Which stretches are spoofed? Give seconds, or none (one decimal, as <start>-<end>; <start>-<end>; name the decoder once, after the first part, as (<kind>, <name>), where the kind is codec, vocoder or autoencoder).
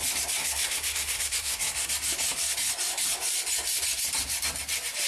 0.4-1.9 (codec, SNAC)